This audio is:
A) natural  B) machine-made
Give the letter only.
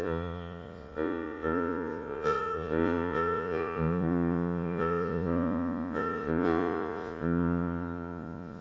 B